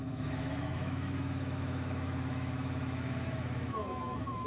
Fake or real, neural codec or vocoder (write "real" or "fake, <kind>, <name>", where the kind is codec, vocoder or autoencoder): fake, autoencoder, DAC-VAE